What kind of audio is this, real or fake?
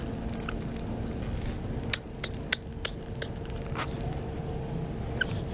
real